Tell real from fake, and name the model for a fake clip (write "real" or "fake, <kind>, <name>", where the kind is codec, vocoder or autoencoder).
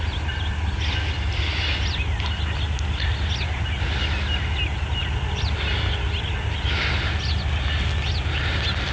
real